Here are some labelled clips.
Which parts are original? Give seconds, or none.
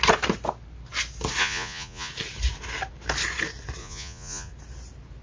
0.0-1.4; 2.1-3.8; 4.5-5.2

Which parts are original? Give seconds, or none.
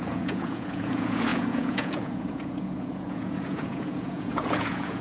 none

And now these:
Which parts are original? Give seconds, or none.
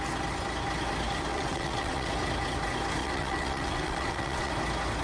0.0-1.3; 2.1-3.0; 4.5-5.0